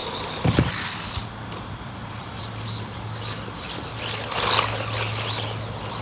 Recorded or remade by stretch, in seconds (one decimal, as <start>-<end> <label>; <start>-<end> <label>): 0.0-2.4 remade; 2.4-6.0 recorded